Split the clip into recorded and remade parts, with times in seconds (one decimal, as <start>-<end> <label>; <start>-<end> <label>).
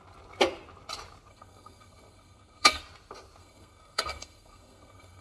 0.0-1.3 recorded; 1.3-2.8 remade; 2.8-3.4 recorded; 3.4-5.2 remade